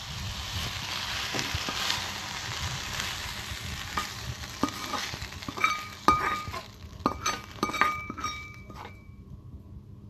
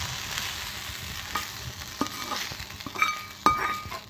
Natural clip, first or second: second